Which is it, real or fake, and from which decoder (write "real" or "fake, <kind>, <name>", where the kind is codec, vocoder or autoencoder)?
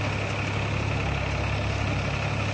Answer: real